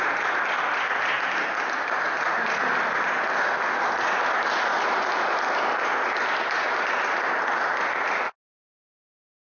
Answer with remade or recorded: recorded